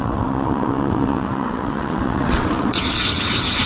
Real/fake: fake